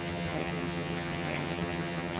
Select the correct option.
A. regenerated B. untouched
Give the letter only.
A